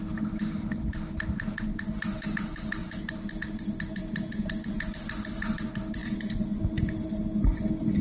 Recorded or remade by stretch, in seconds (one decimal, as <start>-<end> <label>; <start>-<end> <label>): 0.0-8.0 recorded